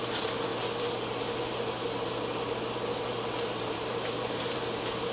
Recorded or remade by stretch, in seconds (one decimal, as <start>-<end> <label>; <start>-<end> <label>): 0.0-0.5 remade; 0.5-3.6 recorded; 3.6-5.1 remade